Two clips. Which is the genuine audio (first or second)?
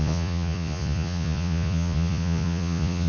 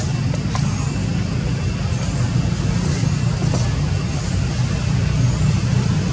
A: second